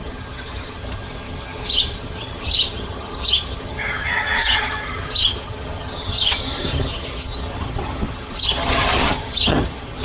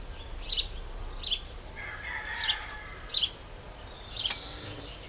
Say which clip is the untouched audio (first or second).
second